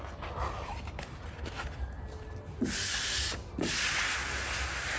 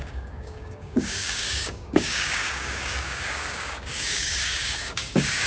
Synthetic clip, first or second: second